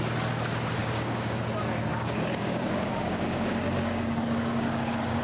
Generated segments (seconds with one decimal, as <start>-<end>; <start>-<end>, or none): 0.8-1.4; 1.9-5.2